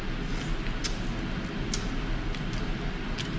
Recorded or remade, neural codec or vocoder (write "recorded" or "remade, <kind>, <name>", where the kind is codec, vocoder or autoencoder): recorded